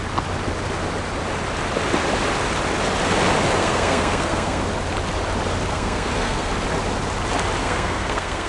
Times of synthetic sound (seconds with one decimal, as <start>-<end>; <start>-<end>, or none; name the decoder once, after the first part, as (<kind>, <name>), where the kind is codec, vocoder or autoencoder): 3.6-4.6 (codec, SNAC); 5.7-6.5; 7.6-8.5